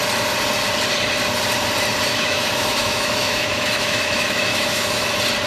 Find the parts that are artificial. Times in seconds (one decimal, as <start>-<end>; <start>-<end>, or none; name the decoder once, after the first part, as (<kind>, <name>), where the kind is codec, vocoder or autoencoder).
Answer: 2.1-5.1 (autoencoder, DAC-VAE)